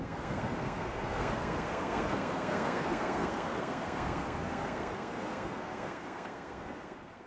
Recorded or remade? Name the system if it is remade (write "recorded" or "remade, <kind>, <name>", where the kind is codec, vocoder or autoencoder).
remade, codec, SNAC